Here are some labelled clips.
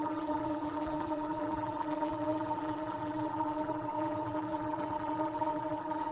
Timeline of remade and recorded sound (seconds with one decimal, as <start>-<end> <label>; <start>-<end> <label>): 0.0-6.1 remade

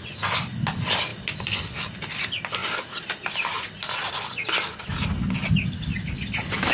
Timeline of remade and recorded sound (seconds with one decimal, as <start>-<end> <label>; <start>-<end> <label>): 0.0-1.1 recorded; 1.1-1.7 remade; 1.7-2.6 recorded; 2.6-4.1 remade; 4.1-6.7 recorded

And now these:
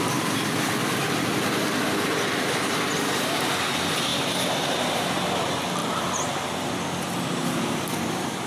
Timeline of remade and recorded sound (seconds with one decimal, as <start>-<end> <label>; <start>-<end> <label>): 0.0-5.8 recorded; 5.8-6.7 remade; 6.7-8.5 recorded